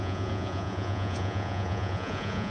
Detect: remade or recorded remade